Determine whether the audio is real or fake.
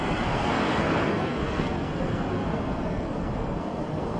fake